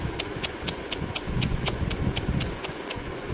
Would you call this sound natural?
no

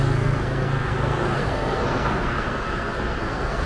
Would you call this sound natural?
no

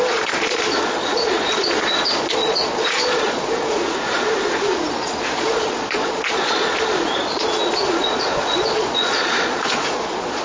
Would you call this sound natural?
no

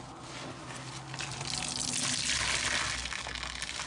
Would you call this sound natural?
yes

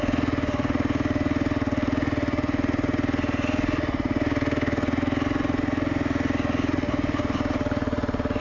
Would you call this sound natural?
yes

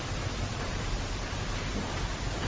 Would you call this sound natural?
yes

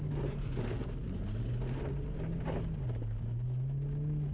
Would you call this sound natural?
yes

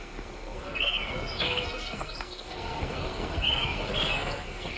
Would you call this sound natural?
no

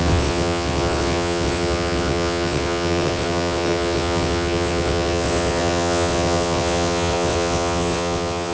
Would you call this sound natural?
no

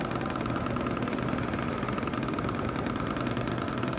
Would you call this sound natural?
yes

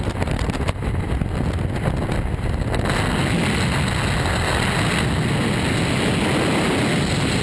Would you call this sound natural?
yes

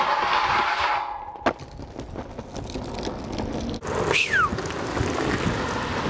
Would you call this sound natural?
yes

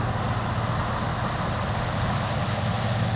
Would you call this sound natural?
yes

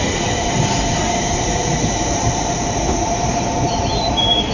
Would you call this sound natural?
no